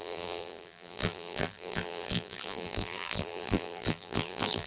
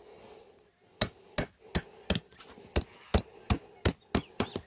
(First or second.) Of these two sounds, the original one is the second